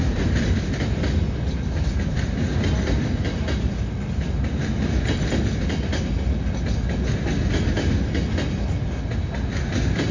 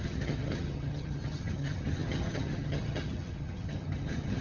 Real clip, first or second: first